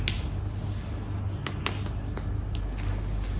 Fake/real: real